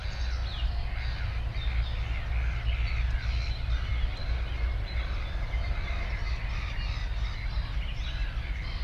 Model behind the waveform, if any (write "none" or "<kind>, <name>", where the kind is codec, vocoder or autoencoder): none